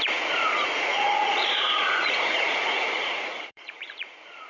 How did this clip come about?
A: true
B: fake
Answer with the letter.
B